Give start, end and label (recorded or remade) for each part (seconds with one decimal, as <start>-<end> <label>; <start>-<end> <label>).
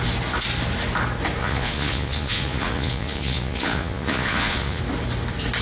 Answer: 0.0-1.4 recorded; 1.4-4.8 remade; 4.8-5.6 recorded